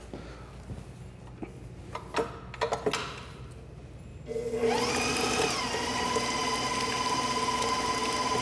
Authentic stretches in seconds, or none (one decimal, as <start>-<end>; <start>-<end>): 0.0-8.4